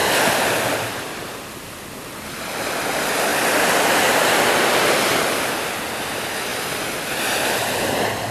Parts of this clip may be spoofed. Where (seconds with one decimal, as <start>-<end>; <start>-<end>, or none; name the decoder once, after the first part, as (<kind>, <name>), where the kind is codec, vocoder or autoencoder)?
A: none